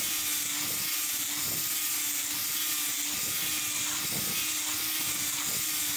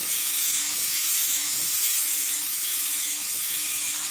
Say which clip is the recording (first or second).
first